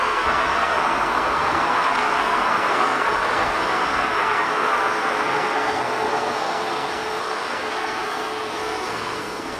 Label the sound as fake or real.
fake